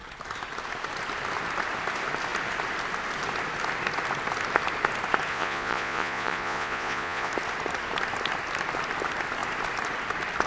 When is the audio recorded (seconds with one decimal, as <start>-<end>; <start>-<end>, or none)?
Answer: 0.0-5.3; 7.3-10.5